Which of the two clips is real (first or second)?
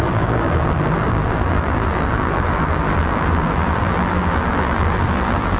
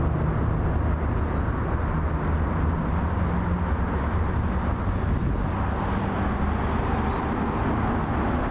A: second